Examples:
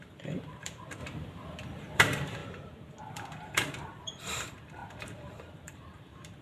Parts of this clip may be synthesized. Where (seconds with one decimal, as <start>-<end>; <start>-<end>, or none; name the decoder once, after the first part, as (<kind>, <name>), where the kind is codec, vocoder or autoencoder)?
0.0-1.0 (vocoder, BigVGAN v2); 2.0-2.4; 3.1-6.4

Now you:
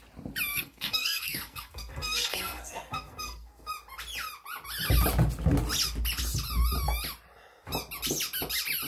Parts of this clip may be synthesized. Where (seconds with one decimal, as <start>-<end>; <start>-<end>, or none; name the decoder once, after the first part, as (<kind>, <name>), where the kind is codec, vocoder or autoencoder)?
0.5-3.7 (codec, SNAC)

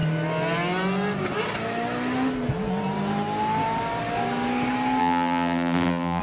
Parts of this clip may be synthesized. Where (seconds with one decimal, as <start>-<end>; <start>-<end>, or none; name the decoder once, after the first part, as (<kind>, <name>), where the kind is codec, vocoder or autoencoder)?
5.0-6.2 (vocoder, BigVGAN v2)